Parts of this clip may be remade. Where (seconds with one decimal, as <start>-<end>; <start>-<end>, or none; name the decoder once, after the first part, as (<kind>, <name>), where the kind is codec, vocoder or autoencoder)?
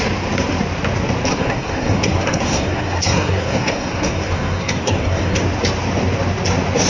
1.3-5.4 (codec, SNAC)